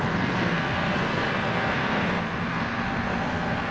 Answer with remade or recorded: remade